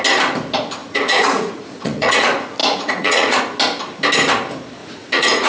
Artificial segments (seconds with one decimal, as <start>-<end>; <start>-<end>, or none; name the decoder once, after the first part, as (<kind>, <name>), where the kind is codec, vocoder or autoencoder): 0.8-2.2 (vocoder, Vocos); 2.6-3.4; 4.8-5.5